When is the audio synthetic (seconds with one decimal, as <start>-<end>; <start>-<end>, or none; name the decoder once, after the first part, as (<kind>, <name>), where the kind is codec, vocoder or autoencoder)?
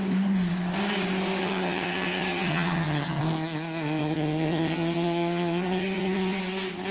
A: 1.4-3.2 (vocoder, HiFi-GAN); 4.0-6.4